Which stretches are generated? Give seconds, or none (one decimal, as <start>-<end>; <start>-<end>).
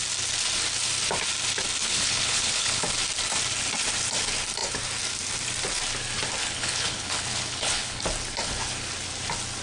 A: 1.8-2.8; 6.4-8.0